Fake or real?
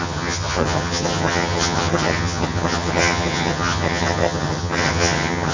fake